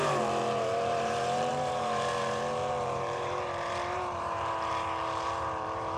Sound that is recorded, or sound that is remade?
remade